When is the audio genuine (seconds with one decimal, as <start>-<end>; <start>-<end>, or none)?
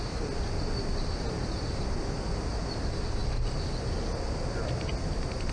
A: 0.0-5.5